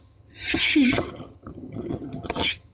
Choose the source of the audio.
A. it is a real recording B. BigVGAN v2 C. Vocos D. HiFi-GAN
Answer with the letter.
D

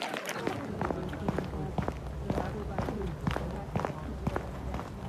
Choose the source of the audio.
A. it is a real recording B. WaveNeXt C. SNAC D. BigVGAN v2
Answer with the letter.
A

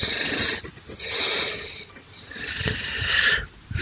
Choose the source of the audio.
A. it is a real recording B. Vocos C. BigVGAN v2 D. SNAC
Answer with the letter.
A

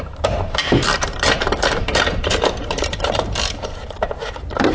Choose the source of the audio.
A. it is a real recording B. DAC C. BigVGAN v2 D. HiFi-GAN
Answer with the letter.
C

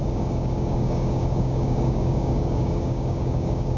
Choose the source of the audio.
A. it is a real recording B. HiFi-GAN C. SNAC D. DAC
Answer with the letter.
D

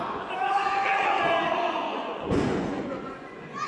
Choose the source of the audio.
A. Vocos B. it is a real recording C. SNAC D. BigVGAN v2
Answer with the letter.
A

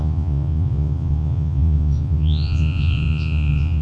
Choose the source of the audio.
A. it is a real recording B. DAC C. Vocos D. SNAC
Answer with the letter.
C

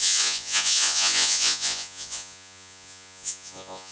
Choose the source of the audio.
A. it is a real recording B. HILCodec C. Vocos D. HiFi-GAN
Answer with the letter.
C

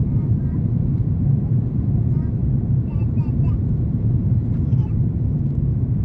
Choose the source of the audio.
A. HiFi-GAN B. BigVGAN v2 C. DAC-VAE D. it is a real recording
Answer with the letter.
B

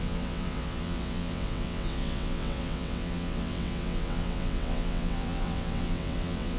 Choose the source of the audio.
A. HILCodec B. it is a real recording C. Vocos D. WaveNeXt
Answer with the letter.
D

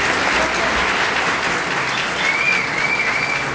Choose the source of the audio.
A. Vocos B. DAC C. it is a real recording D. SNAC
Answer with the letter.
C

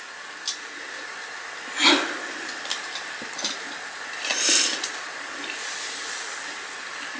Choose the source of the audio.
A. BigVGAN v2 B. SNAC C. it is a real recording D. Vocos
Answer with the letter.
C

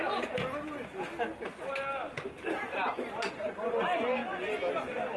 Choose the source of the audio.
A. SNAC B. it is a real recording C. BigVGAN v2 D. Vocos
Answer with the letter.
B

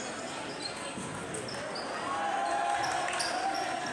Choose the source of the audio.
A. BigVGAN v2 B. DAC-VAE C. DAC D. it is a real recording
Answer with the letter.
D